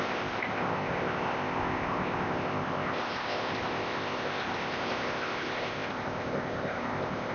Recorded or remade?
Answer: remade